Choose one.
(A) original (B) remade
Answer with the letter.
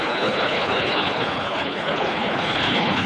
B